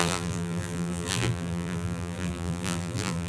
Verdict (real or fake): fake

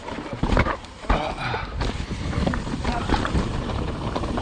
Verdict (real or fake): fake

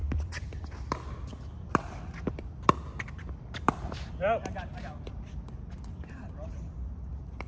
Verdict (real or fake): fake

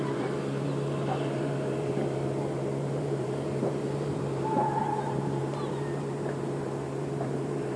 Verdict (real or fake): fake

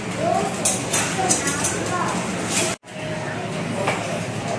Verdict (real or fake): real